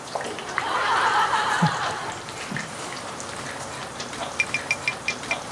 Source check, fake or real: fake